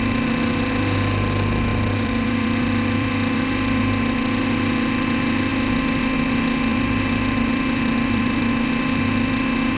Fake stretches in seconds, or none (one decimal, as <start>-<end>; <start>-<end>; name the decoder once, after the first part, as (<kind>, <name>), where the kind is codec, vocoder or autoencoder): 1.7-3.8 (vocoder, BigVGAN v2); 5.5-6.0; 6.7-8.5